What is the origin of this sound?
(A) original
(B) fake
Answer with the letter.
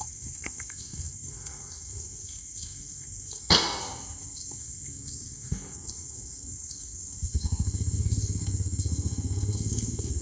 B